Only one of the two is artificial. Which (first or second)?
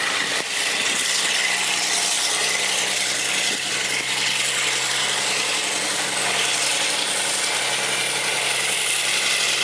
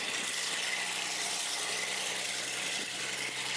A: second